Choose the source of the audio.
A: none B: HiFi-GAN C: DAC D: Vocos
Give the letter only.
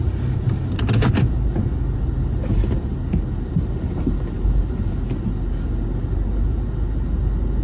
A